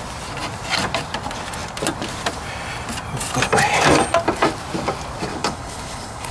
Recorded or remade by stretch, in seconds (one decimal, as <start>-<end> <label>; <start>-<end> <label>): 0.0-5.3 recorded; 5.3-6.3 remade